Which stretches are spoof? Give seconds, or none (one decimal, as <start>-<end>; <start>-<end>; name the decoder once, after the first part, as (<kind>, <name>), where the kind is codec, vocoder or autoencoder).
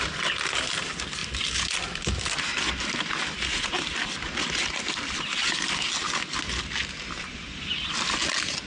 none